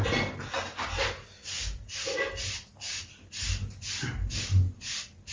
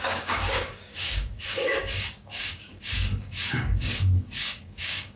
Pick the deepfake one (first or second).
second